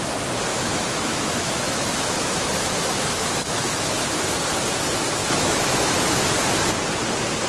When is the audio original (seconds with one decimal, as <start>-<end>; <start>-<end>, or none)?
0.0-0.5; 4.1-5.2; 6.3-7.5

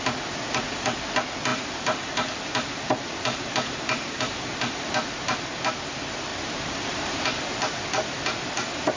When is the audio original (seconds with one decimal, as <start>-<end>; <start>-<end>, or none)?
0.0-1.5; 4.7-6.3; 7.2-9.0